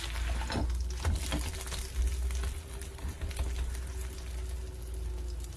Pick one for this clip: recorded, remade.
recorded